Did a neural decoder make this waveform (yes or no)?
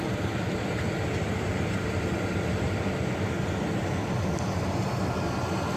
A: no